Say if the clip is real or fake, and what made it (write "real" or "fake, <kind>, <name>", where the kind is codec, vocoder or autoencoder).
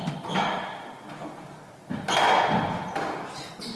real